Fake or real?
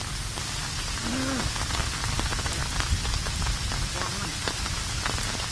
real